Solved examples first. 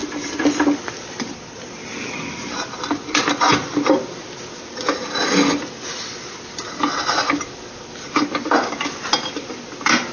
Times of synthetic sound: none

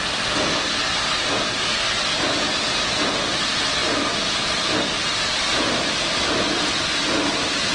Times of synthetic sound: none

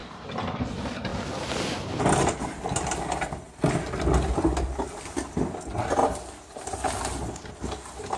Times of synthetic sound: none

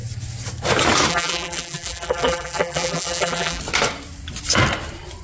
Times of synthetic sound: 1.1-3.6 (vocoder, BigVGAN v2)